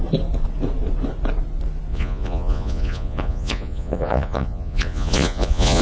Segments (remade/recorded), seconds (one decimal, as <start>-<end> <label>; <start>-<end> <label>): 0.0-1.9 recorded; 1.9-5.8 remade